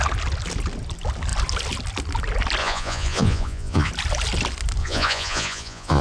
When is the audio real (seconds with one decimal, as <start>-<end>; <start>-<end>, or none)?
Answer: 0.0-2.6; 3.9-4.8